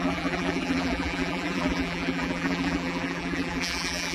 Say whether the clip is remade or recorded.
remade